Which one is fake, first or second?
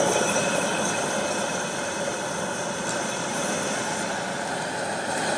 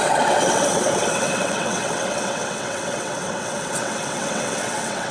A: second